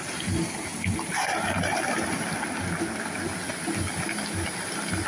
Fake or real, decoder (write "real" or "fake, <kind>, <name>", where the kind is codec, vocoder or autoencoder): real